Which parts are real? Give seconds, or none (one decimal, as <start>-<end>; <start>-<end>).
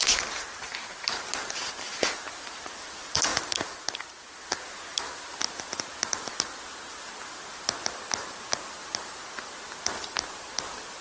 0.0-11.0